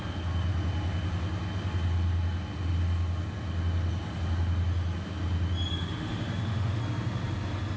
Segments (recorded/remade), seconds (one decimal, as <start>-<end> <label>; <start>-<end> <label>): 0.0-5.7 recorded; 5.7-6.8 remade; 6.8-7.8 recorded